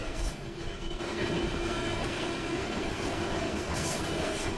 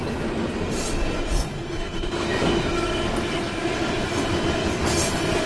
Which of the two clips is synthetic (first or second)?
first